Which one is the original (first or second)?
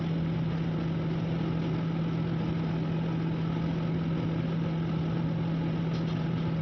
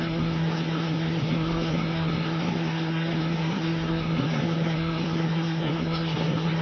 first